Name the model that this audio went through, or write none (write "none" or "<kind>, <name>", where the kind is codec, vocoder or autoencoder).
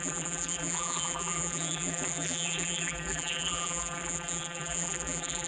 vocoder, BigVGAN v2